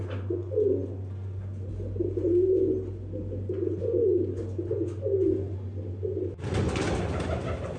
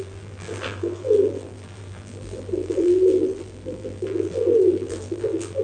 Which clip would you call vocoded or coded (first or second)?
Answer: second